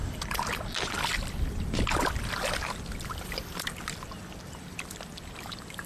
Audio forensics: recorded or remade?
recorded